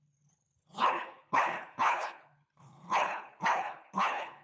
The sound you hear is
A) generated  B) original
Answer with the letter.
A